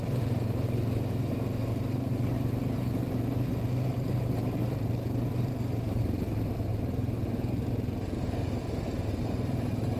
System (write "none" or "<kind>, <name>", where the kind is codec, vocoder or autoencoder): vocoder, BigVGAN v2